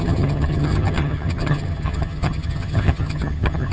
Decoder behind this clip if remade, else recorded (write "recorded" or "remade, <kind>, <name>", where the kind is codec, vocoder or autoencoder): remade, vocoder, HiFi-GAN